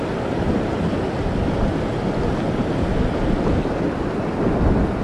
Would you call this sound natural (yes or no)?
yes